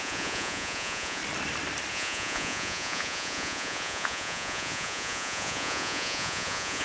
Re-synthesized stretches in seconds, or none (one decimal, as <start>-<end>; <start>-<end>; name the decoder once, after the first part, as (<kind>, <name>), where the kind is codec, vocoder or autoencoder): 0.0-1.2 (vocoder, Vocos); 1.9-6.8